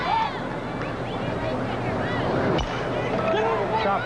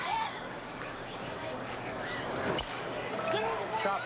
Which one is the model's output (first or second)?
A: second